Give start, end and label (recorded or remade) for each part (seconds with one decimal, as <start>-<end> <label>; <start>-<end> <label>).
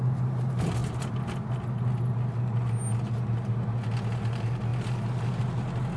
0.0-6.0 recorded